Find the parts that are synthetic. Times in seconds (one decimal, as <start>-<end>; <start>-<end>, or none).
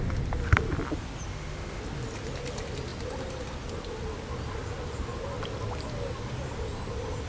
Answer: 1.3-1.8